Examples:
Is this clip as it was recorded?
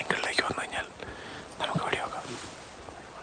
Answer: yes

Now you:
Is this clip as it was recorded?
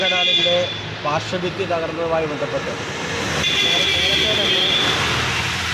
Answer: yes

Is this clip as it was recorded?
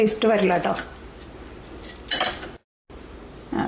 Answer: yes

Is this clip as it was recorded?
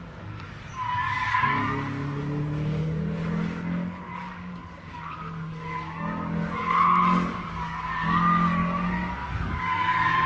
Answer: no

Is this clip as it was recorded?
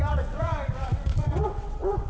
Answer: no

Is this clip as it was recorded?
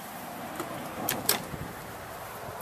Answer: no